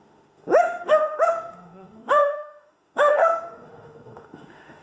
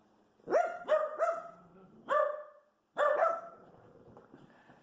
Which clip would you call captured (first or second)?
second